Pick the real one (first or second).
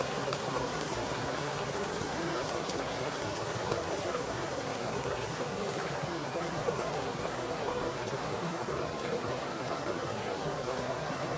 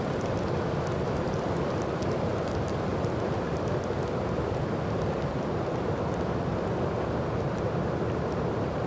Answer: second